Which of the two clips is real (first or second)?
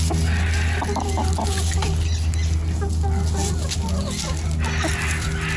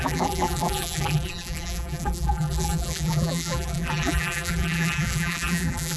first